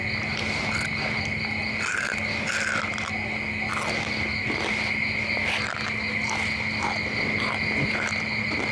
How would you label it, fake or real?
real